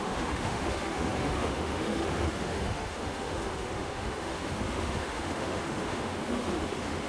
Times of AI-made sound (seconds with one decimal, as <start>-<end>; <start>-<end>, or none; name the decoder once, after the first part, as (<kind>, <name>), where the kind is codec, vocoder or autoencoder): 0.0-7.1 (autoencoder, DAC-VAE)